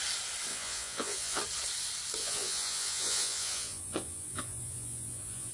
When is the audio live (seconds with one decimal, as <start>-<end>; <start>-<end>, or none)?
0.0-0.5; 1.4-2.2